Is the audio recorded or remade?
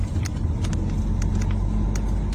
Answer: recorded